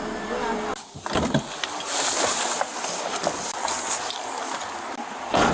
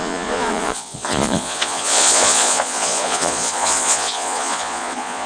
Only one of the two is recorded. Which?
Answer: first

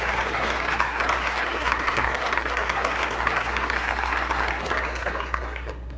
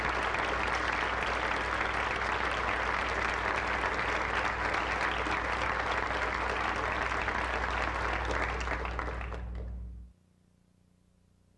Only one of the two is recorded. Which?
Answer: second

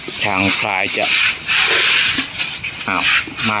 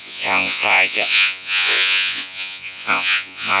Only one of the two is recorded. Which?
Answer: first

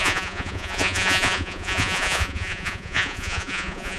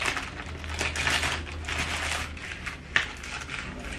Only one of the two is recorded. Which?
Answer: second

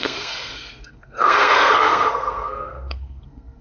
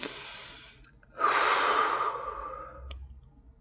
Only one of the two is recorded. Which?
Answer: second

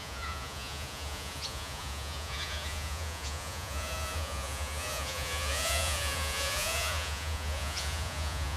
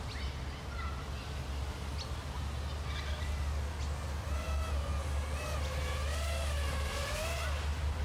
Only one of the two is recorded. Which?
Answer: second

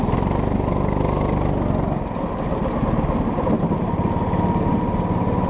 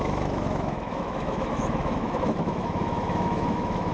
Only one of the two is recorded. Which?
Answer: first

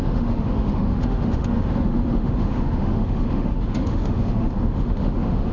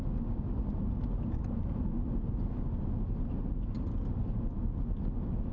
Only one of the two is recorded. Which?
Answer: second